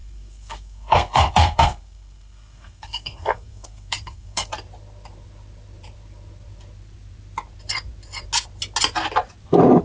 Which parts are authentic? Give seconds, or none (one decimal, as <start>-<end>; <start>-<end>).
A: 4.5-9.8

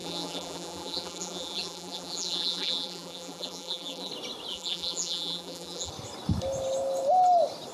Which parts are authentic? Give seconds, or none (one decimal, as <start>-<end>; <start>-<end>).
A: 4.1-4.5; 5.9-7.7

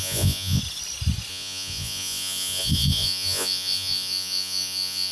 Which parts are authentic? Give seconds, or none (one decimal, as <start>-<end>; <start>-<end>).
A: 0.6-1.3

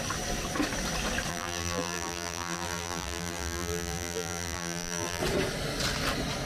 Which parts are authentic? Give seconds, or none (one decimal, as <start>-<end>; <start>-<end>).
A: 0.0-1.3; 5.2-6.5